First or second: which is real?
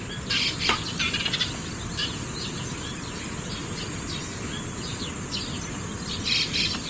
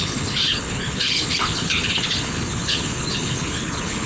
first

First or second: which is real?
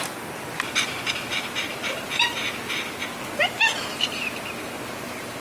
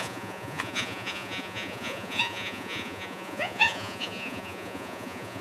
first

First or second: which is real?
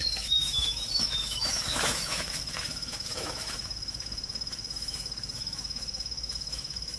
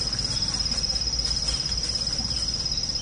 second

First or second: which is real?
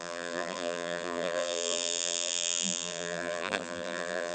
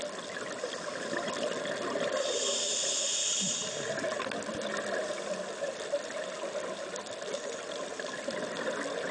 second